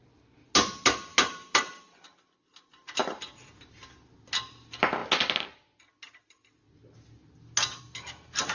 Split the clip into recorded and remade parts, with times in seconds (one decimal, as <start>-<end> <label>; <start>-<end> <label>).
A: 0.0-1.1 recorded; 1.1-1.8 remade; 1.8-8.5 recorded